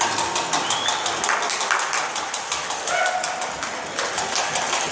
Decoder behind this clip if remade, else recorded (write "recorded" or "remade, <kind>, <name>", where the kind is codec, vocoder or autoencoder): recorded